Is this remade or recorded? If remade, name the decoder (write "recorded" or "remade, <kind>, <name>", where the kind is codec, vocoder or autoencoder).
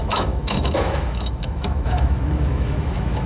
remade, autoencoder, DAC-VAE